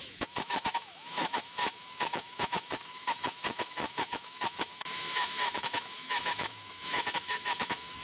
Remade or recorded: remade